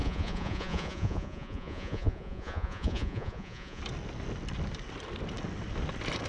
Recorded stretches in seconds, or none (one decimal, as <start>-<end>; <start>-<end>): 3.8-6.3